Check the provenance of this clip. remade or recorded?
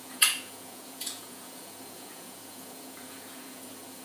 remade